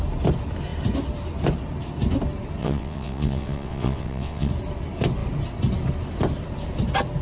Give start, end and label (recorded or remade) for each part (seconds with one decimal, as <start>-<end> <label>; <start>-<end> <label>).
0.0-2.6 recorded; 2.6-4.5 remade; 4.5-7.2 recorded